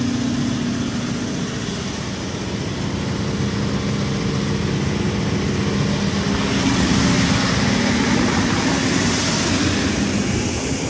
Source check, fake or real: real